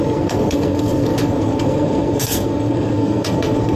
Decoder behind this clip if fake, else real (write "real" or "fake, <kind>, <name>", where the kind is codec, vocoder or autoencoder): fake, codec, SNAC